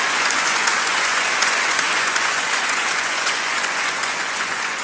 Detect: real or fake fake